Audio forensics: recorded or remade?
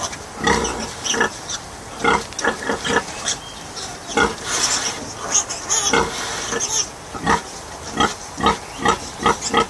recorded